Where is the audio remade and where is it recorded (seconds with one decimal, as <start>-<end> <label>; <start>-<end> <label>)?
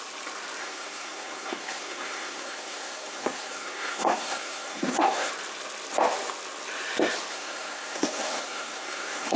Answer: 0.0-0.6 recorded; 0.6-5.3 remade; 5.3-7.3 recorded; 7.3-9.4 remade